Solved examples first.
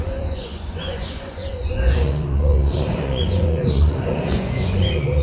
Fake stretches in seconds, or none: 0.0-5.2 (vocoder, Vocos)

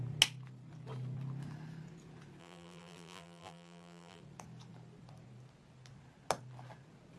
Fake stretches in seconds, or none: 2.4-4.2 (vocoder, BigVGAN v2)